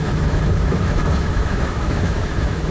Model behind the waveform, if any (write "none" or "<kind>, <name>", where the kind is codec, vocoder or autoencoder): autoencoder, DAC-VAE